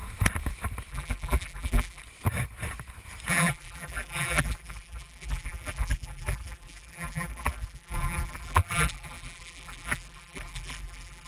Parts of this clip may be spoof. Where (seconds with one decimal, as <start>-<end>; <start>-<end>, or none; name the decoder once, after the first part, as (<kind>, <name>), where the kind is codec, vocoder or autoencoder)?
0.9-2.0 (vocoder, BigVGAN v2); 3.3-11.3